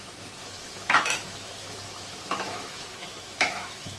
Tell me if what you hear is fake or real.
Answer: fake